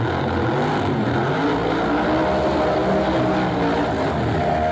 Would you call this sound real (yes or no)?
yes